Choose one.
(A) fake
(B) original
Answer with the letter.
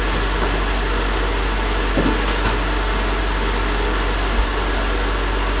B